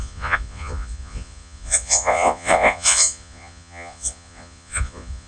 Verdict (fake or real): fake